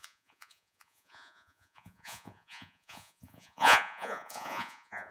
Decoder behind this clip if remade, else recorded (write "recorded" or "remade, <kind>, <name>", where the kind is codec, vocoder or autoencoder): remade, vocoder, Vocos